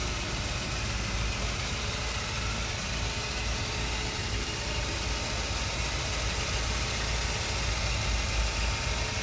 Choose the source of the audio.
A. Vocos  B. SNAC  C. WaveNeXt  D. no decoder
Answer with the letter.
D